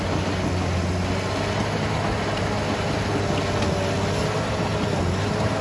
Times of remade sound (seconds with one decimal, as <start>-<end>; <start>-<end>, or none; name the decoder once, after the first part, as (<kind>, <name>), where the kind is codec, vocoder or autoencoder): none